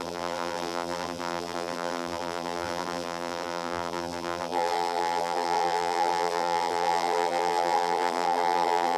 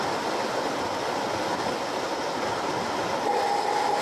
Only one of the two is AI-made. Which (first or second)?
first